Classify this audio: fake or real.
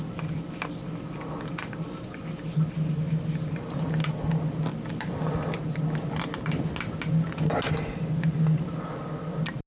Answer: real